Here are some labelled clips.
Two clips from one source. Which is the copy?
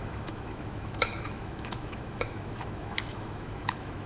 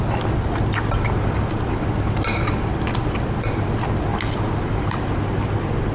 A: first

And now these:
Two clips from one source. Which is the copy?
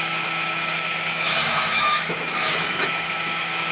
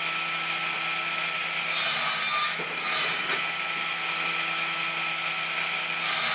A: first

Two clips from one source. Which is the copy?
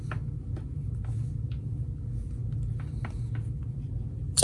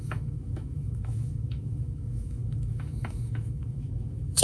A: second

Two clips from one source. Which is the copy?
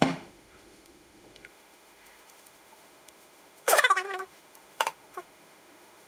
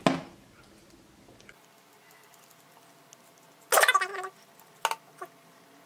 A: first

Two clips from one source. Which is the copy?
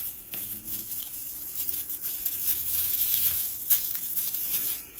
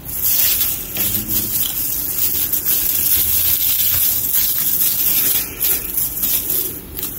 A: first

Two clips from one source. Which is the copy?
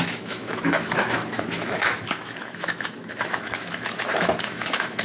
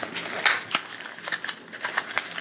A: first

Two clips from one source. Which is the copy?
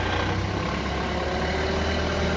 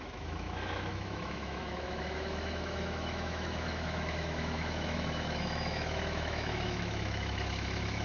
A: second